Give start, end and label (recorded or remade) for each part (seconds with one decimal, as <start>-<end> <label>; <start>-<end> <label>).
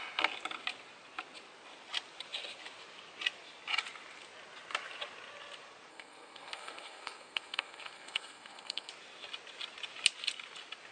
0.0-5.9 recorded; 5.9-8.9 remade; 8.9-10.9 recorded